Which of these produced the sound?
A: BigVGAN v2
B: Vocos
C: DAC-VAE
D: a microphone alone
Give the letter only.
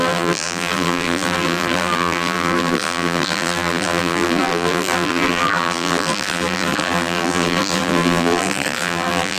A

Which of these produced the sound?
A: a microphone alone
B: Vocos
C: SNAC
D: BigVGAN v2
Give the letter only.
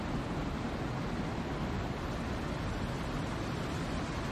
A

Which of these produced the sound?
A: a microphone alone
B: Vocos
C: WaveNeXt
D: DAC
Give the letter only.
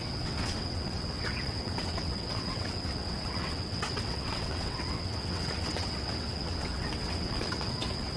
C